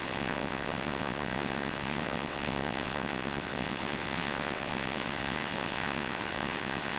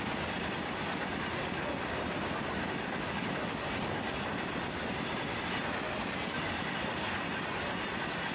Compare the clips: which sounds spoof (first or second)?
first